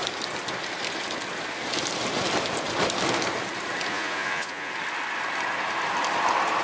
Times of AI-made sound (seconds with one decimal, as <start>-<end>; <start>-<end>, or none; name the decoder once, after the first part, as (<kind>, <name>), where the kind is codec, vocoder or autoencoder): 3.9-4.7 (vocoder, Vocos)